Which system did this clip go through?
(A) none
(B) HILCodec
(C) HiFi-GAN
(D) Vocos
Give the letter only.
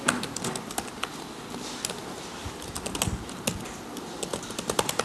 A